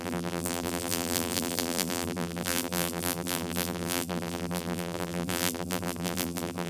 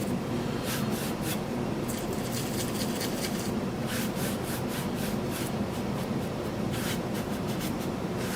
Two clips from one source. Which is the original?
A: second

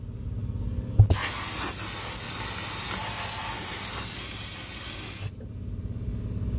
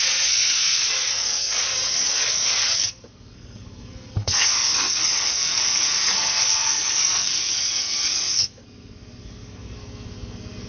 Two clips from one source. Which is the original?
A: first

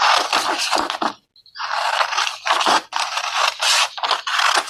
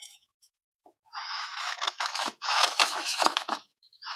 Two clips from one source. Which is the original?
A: first